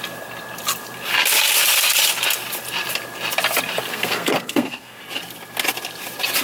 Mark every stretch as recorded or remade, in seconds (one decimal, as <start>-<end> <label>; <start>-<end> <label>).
0.0-3.9 recorded; 3.9-5.0 remade; 5.0-6.4 recorded

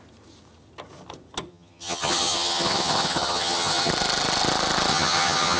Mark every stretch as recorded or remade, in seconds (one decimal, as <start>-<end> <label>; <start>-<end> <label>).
0.0-1.5 recorded; 1.5-3.9 remade; 3.9-4.9 recorded; 4.9-5.6 remade